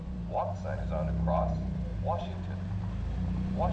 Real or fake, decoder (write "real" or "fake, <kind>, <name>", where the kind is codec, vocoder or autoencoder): real